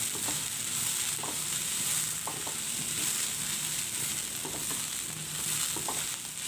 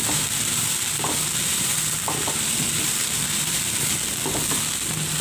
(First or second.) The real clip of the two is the first